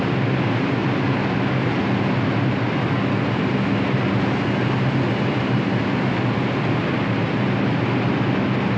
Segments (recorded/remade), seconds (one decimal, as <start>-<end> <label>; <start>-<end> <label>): 0.0-8.8 recorded